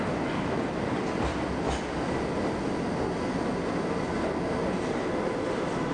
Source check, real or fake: real